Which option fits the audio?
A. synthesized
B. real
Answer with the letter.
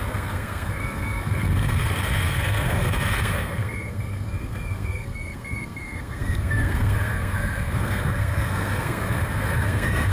A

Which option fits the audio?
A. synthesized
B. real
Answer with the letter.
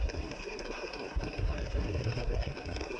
A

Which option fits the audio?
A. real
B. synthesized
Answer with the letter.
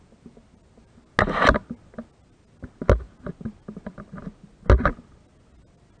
A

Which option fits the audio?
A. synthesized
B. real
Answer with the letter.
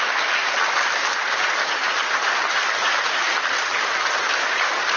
B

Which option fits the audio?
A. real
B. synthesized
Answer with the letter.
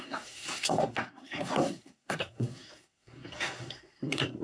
B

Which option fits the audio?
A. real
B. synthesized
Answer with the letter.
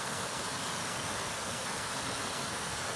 B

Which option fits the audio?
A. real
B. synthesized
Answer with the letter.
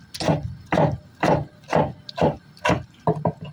A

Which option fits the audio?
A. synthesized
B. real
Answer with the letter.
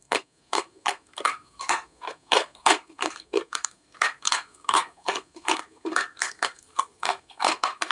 A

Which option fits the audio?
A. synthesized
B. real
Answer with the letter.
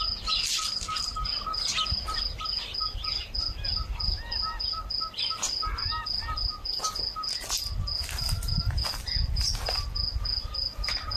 B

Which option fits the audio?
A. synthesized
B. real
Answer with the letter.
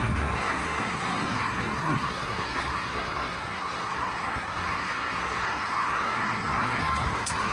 A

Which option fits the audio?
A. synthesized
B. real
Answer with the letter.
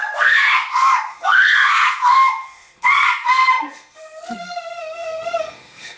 A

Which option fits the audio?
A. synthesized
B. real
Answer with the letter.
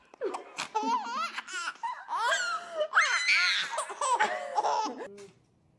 B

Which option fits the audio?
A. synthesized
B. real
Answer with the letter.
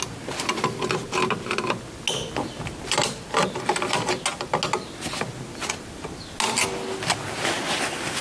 B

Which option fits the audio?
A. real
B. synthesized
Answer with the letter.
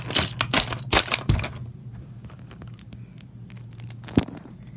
A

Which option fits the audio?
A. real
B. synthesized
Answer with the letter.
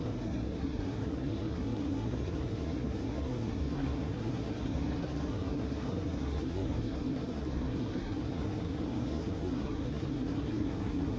B